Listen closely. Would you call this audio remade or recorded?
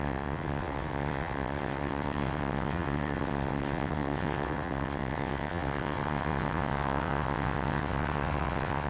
remade